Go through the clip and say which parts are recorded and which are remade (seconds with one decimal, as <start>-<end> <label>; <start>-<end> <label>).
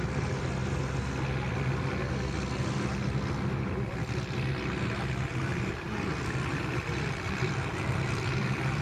0.0-5.3 recorded; 5.3-8.8 remade